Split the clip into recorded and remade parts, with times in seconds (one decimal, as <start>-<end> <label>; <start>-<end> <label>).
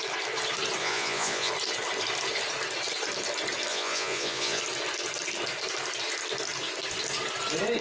0.0-0.8 recorded; 0.8-1.5 remade; 1.5-3.7 recorded; 3.7-4.6 remade; 4.6-7.8 recorded